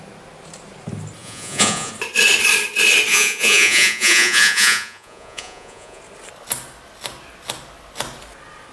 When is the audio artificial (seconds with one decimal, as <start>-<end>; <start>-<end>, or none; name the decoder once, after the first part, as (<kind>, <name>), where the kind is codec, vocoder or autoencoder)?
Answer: 1.2-1.9 (vocoder, Vocos); 3.1-6.0